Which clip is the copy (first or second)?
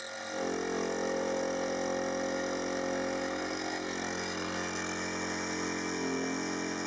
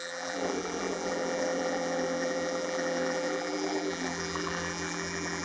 second